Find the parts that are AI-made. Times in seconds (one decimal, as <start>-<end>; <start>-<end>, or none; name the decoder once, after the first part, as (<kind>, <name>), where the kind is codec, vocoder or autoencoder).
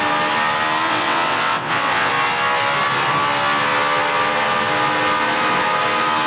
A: 0.9-2.1 (vocoder, WaveNeXt)